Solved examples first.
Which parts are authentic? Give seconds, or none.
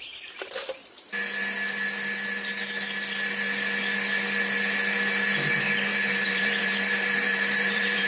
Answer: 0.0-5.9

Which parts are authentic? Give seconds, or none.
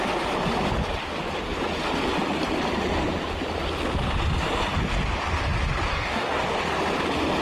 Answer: 0.0-5.9; 6.4-7.4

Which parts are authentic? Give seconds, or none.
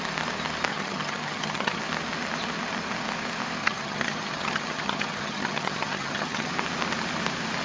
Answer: 0.0-0.7; 1.8-3.6; 6.5-7.6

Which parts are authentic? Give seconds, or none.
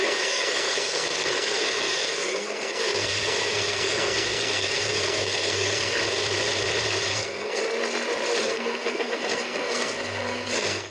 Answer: 6.0-7.1; 7.6-8.4